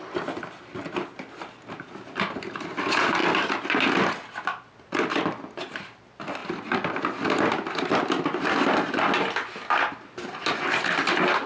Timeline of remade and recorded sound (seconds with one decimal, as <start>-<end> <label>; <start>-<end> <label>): 0.0-11.5 recorded